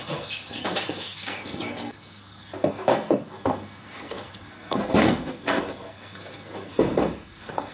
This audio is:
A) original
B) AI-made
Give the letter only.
B